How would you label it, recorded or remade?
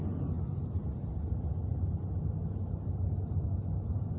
recorded